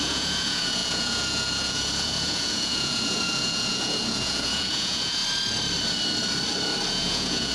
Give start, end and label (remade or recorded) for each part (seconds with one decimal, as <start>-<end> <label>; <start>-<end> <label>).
0.0-5.2 remade; 5.2-6.9 recorded; 6.9-7.5 remade